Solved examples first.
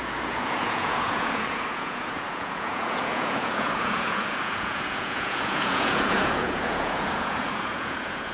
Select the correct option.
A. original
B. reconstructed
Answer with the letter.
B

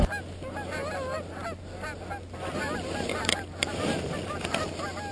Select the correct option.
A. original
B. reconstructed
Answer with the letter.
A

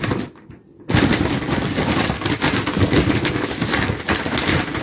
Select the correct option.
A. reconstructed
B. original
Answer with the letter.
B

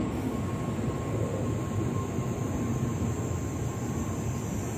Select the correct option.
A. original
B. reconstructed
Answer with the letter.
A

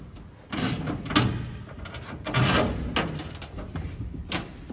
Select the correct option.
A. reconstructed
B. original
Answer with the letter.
B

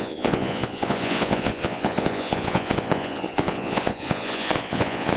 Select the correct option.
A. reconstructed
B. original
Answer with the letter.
A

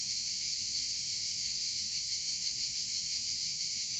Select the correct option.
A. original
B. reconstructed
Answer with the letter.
B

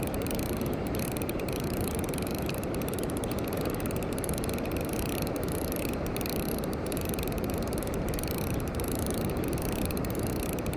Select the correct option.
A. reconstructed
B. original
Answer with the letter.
A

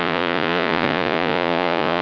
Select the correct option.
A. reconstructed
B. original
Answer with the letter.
A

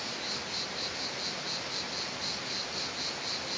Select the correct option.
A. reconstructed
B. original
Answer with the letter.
B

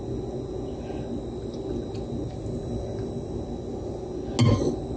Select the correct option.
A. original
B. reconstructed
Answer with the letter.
A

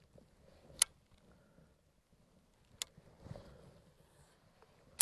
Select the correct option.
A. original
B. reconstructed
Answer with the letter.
A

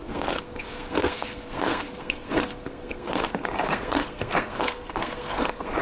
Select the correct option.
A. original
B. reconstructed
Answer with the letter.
B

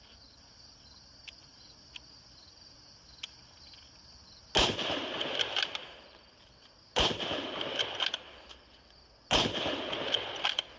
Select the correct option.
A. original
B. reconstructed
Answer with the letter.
A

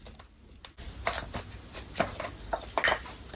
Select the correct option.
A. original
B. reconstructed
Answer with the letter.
A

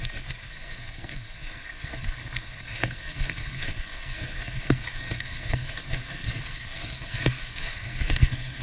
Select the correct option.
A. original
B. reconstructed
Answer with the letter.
B